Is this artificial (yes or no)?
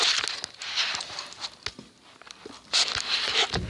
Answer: no